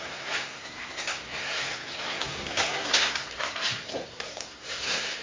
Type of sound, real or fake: fake